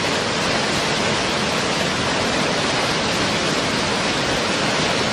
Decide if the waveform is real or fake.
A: real